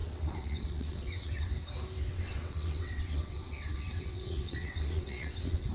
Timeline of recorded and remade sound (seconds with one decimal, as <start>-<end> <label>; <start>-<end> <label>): 0.0-1.5 remade; 1.5-2.1 recorded; 2.1-5.7 remade